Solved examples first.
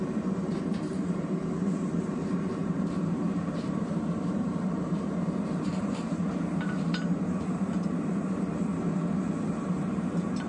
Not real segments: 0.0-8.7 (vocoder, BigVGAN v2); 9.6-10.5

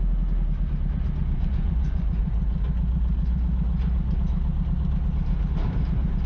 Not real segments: 1.2-2.2 (vocoder, Vocos)

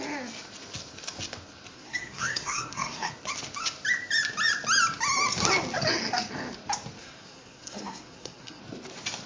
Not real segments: 1.7-3.1 (codec, SNAC); 7.0-8.6

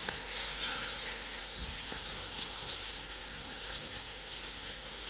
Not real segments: 0.0-5.1 (codec, SNAC)

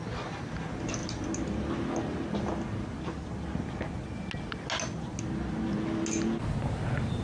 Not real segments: none

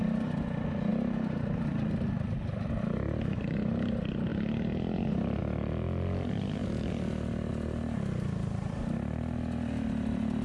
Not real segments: none

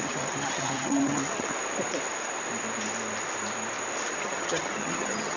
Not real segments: 0.0-1.5 (vocoder, HiFi-GAN); 4.2-5.4

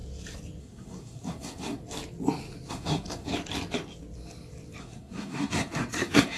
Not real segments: 0.6-1.8 (codec, SNAC); 2.7-3.3; 4.8-6.4